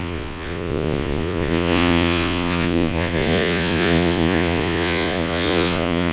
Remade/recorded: remade